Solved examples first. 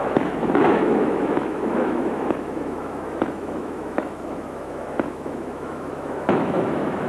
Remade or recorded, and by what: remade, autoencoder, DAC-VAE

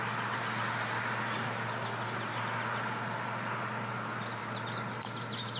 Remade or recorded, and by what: recorded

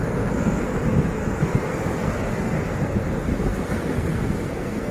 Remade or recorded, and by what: remade, codec, SNAC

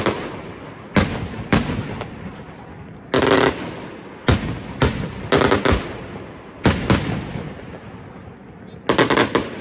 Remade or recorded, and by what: recorded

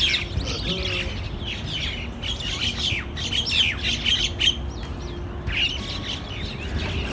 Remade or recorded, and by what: recorded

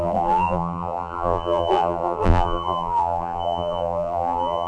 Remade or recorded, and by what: remade, vocoder, BigVGAN v2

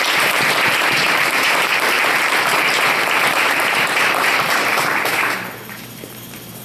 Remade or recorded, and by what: remade, vocoder, BigVGAN v2